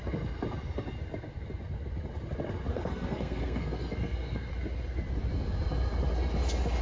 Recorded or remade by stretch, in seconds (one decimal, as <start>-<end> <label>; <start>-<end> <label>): 0.0-2.7 recorded; 2.7-4.5 remade; 4.5-6.8 recorded